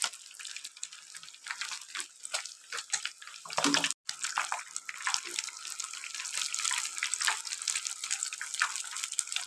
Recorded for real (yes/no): yes